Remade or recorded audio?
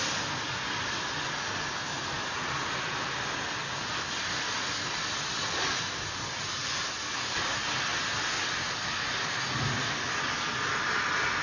recorded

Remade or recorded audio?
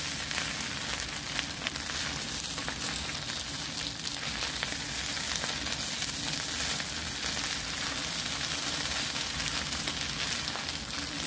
recorded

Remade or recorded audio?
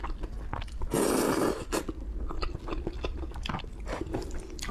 recorded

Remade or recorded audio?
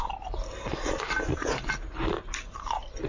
recorded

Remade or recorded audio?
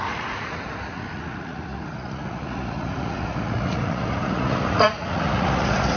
remade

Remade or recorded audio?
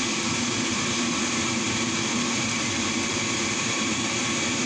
remade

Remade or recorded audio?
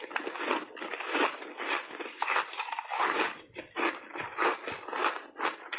recorded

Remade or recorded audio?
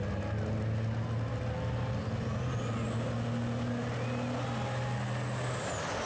recorded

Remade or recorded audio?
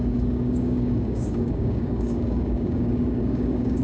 remade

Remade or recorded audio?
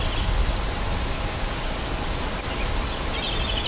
recorded